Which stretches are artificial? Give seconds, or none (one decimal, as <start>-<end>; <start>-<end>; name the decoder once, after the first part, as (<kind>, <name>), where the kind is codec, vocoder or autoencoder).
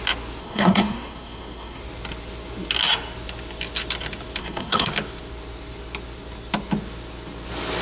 0.4-1.8 (codec, SNAC); 4.4-4.9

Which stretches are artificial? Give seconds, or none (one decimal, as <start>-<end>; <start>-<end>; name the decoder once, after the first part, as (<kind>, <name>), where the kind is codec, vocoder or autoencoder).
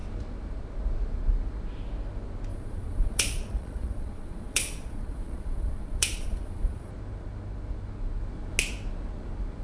2.5-6.9 (vocoder, Vocos)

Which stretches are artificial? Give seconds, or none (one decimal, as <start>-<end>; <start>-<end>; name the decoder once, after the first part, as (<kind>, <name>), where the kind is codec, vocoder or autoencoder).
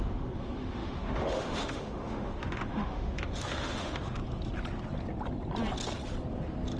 0.0-4.2 (autoencoder, DAC-VAE)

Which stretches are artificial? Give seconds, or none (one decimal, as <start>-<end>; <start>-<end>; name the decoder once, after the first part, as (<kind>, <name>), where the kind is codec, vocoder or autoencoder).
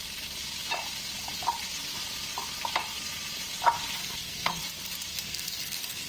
4.0-4.6 (codec, SNAC); 5.1-6.1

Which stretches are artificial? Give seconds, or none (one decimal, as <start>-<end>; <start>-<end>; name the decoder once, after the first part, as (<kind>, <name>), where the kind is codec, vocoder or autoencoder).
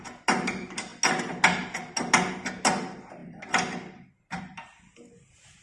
none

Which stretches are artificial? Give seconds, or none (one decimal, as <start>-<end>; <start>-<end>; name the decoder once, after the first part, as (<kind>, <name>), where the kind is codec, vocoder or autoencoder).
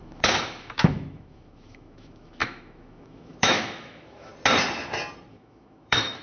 0.0-4.3 (autoencoder, DAC-VAE); 5.3-6.2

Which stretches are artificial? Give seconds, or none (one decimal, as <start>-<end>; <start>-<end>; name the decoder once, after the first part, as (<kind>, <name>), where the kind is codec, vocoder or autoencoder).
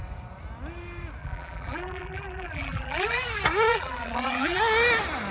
1.2-3.2 (vocoder, BigVGAN v2); 3.7-4.6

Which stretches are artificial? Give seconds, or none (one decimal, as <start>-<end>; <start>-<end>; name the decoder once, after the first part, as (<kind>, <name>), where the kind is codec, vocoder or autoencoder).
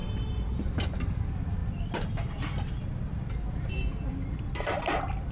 none